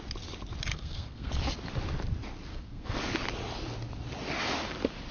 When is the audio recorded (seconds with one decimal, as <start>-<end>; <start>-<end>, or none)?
0.0-0.7; 1.3-2.5; 3.0-5.1